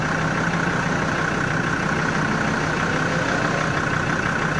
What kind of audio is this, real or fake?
real